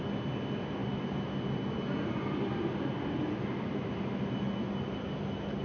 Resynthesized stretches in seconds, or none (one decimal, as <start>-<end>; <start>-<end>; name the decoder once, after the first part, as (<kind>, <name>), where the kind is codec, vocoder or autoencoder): none